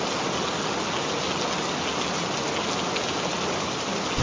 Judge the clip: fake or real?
real